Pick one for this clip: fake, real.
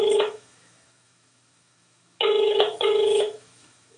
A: fake